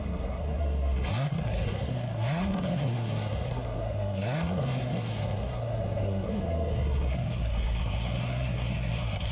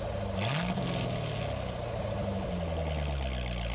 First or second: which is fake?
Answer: first